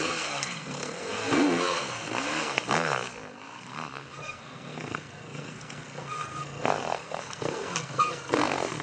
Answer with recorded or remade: remade